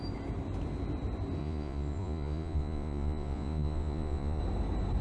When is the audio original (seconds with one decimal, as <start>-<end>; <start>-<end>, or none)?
0.0-1.4; 4.4-5.0